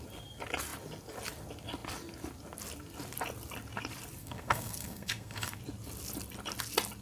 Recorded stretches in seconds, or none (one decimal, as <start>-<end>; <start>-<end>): 0.0-4.2; 5.6-7.0